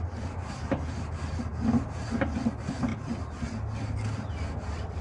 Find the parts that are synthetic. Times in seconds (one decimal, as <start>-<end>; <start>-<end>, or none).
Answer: none